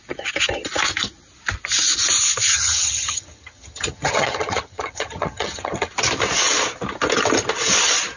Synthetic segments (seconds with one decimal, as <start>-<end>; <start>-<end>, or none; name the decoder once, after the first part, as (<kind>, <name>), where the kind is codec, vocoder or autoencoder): 2.5-5.9 (vocoder, HiFi-GAN)